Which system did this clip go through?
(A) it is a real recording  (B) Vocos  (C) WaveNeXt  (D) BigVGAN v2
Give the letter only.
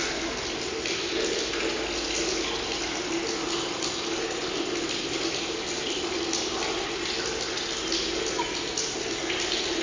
A